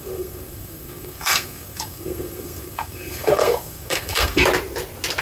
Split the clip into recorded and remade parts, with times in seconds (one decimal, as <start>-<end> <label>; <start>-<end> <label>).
0.0-4.4 remade; 4.4-5.2 recorded